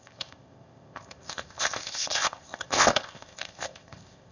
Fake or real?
fake